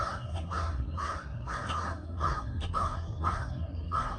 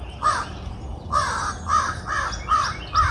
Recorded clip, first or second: second